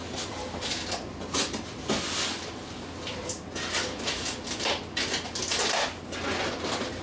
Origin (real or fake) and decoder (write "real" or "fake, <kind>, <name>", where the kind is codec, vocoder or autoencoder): real